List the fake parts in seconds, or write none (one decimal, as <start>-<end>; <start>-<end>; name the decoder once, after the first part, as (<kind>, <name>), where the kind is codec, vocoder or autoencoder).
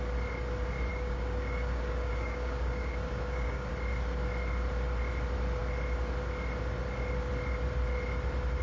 0.9-3.7 (codec, DAC)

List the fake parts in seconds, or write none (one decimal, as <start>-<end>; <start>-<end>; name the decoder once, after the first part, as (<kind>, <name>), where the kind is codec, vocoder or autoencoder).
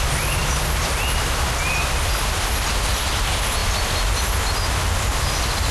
none